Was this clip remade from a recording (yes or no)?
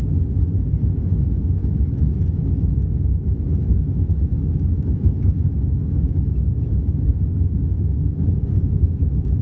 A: yes